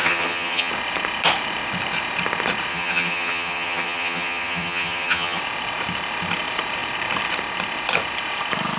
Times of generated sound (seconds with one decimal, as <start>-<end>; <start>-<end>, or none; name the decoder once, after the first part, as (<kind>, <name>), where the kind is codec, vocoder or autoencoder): 0.0-0.7 (vocoder, HiFi-GAN); 2.7-5.4